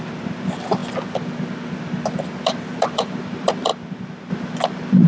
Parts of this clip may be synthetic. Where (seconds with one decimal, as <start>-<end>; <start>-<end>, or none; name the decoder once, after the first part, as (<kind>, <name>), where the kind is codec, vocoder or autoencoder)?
0.0-0.8 (vocoder, BigVGAN v2); 1.8-5.1